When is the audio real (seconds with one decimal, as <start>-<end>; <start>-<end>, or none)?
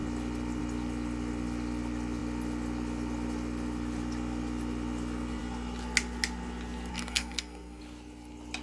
0.0-6.9; 7.8-8.6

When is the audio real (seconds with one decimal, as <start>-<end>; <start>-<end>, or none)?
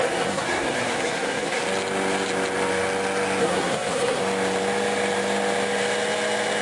1.6-3.4; 4.2-6.6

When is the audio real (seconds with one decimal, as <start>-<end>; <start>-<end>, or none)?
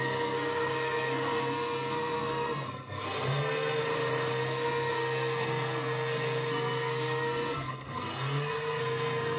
3.8-4.3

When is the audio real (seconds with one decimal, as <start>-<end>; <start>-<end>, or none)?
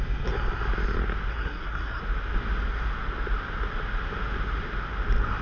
0.0-1.3; 2.0-5.4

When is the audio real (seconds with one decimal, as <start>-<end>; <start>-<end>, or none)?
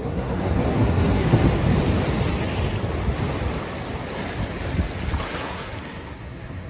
1.4-5.2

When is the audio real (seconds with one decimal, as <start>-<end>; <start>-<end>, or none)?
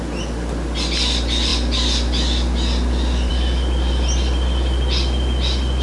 0.0-5.8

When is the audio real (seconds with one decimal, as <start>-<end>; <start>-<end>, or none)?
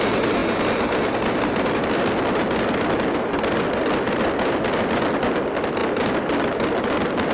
0.0-7.3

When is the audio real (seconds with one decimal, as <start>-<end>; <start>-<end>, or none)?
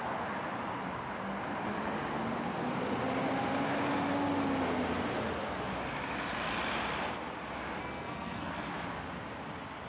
0.0-7.8; 8.7-9.9